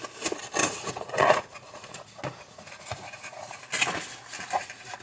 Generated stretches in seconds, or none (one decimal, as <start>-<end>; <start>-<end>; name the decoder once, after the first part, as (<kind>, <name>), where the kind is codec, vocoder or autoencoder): 0.6-3.6 (vocoder, Vocos)